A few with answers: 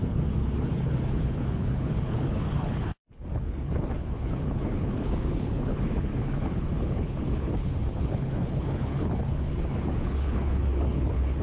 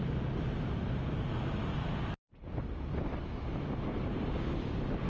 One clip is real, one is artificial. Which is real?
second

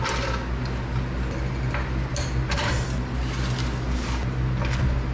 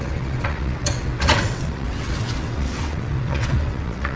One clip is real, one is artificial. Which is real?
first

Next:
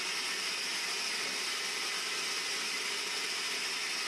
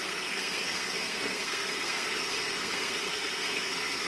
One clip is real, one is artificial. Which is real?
first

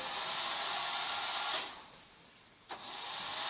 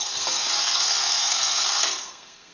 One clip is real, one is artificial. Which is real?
first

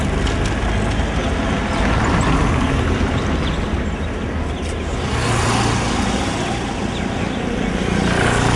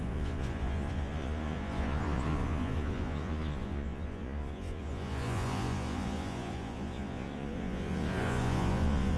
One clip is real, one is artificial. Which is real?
first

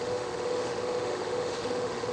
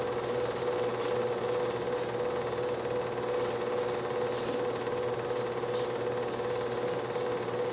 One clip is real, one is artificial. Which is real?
second